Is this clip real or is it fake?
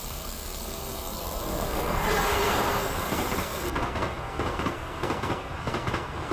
fake